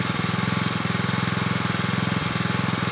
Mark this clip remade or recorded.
recorded